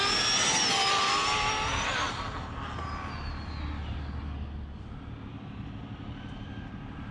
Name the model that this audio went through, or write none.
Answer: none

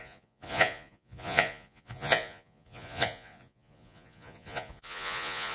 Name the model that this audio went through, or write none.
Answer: vocoder, Vocos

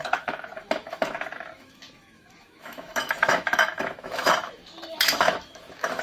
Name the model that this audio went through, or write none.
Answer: autoencoder, DAC-VAE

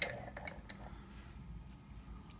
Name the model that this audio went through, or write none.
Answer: none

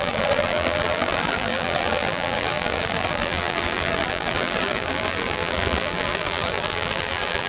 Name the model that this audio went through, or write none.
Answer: vocoder, BigVGAN v2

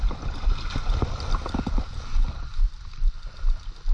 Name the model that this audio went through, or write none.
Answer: none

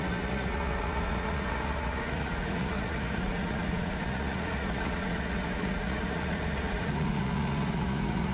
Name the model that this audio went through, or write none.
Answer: vocoder, Vocos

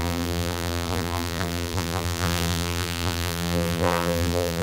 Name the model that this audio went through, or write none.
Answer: vocoder, BigVGAN v2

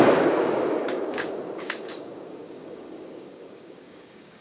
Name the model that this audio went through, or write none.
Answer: codec, DAC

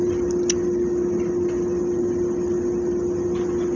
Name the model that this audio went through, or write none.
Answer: none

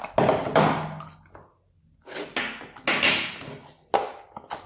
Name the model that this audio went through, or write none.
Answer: none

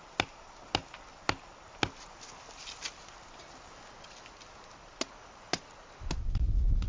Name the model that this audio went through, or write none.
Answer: none